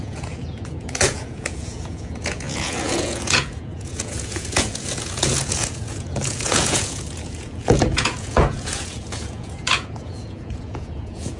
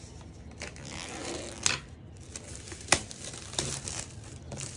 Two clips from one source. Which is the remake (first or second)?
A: first